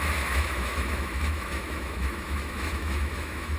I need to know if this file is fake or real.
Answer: fake